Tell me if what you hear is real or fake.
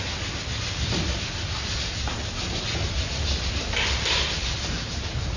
real